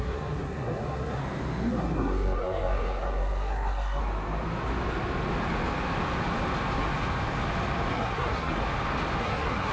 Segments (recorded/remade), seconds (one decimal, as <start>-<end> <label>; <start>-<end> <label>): 0.0-1.2 remade; 1.2-1.7 recorded; 1.7-4.0 remade; 4.0-7.9 recorded; 7.9-8.6 remade; 8.6-9.2 recorded; 9.2-9.7 remade